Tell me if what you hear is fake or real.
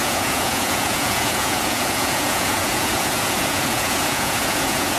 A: fake